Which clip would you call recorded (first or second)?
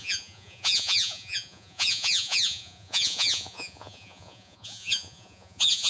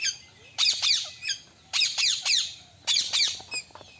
second